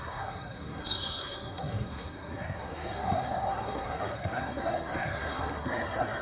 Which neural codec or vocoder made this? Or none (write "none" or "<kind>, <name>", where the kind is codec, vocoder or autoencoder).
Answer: codec, SNAC